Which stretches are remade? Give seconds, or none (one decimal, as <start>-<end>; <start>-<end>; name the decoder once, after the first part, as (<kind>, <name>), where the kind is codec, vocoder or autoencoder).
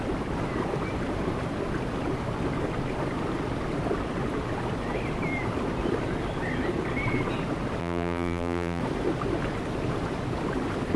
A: 7.8-8.8 (vocoder, BigVGAN v2)